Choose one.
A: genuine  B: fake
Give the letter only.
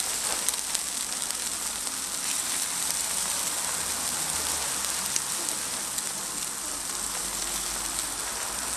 A